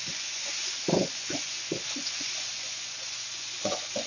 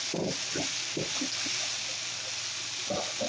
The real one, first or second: second